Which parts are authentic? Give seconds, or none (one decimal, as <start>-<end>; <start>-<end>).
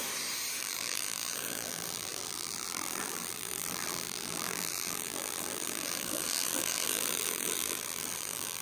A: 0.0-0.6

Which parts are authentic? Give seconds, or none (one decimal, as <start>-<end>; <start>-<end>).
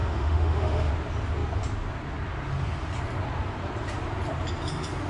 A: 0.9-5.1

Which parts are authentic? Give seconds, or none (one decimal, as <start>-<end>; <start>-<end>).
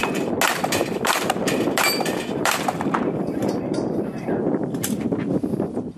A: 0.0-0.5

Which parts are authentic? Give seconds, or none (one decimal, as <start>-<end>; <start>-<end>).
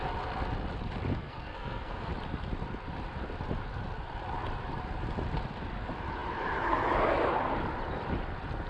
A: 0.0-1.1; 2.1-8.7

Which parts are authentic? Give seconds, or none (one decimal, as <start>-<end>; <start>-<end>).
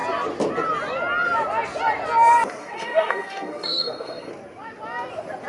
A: 0.0-2.6; 4.3-5.5